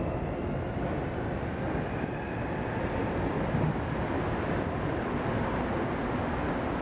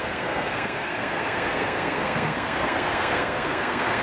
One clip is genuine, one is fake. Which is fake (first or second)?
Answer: second